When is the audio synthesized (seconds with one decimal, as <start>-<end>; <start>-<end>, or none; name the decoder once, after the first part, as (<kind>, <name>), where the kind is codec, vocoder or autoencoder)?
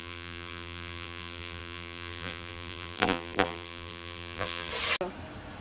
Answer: 0.0-4.7 (vocoder, BigVGAN v2)